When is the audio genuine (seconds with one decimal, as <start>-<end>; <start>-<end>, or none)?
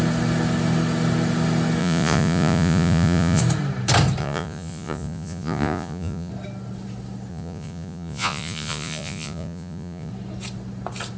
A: 0.0-1.8; 3.4-4.2; 6.3-7.3; 10.1-11.2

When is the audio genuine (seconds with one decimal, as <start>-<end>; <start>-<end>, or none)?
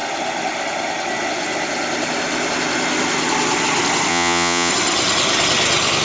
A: 0.0-4.1; 4.7-6.0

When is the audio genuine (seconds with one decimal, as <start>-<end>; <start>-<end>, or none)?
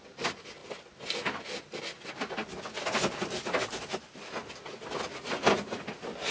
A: 0.0-6.3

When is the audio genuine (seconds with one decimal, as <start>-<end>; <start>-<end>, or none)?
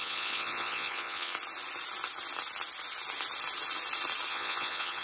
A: 1.3-4.3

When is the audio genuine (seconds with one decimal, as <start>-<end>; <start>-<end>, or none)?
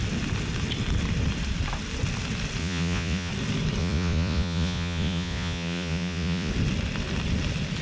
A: 0.0-2.6; 3.3-3.8; 6.5-7.8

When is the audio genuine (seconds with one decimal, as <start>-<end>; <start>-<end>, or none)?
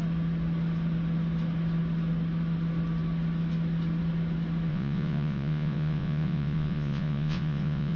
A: 0.0-4.7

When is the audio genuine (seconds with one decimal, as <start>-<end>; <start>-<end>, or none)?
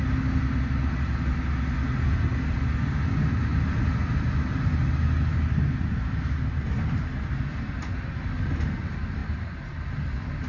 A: 0.0-10.5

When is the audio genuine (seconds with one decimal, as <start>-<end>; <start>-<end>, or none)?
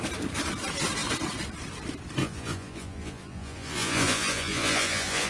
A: 0.0-2.2